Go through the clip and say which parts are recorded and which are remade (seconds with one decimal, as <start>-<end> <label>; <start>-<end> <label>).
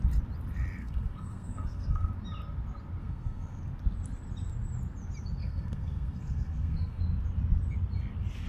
0.0-0.8 recorded; 0.8-2.1 remade; 2.1-3.0 recorded; 3.0-3.6 remade; 3.6-5.4 recorded; 5.4-7.0 remade; 7.0-8.5 recorded